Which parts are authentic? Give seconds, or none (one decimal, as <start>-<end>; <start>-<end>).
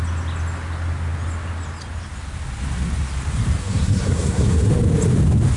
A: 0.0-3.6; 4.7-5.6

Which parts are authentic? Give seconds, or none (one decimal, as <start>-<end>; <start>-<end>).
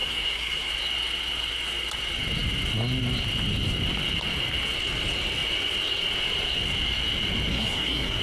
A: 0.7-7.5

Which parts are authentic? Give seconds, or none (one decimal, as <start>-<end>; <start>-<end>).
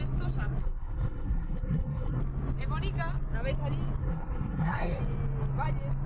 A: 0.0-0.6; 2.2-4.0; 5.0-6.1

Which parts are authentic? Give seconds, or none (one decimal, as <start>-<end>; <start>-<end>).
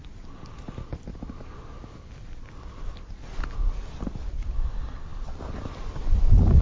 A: 0.0-6.6